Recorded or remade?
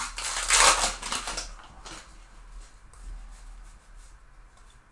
recorded